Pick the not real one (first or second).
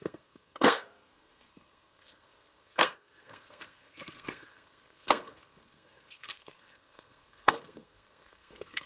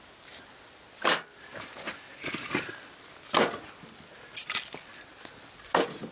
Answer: first